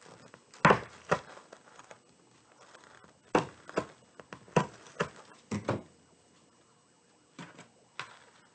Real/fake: real